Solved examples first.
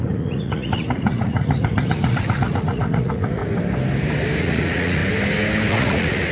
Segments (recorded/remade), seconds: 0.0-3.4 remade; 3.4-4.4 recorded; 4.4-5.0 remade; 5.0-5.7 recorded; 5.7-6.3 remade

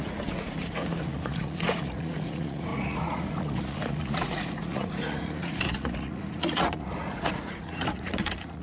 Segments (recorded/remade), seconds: 0.0-8.6 remade

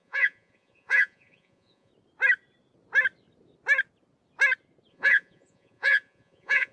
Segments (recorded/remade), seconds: 0.0-1.9 remade; 1.9-4.9 recorded; 4.9-6.7 remade

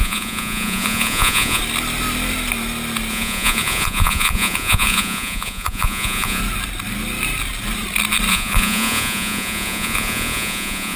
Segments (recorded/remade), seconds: 0.0-1.6 remade; 1.6-3.1 recorded; 3.1-6.4 remade; 6.4-8.3 recorded; 8.3-11.0 remade

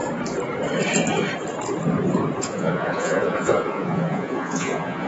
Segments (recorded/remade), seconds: 0.0-2.4 recorded; 2.4-5.1 remade

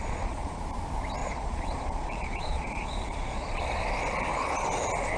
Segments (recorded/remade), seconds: 0.0-0.6 remade; 0.6-1.2 recorded; 1.2-3.6 remade; 3.6-5.2 recorded

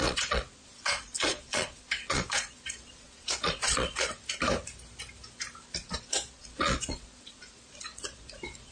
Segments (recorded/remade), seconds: 0.0-4.1 remade; 4.1-5.8 recorded; 5.8-8.7 remade

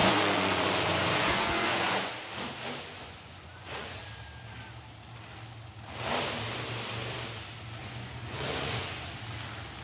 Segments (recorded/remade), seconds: 0.0-2.1 remade; 2.1-2.9 recorded; 2.9-4.0 remade; 4.0-7.8 recorded; 7.8-9.1 remade; 9.1-9.8 recorded